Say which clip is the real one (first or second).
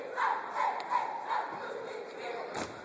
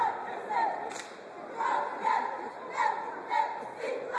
second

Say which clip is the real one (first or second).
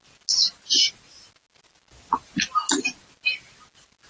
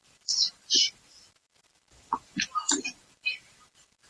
first